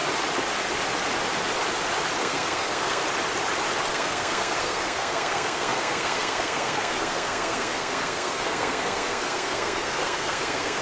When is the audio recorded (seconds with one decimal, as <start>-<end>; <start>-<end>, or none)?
0.0-2.2; 3.0-3.9